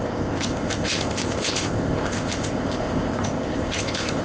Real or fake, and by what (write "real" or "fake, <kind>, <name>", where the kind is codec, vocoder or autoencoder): fake, codec, ZipCodec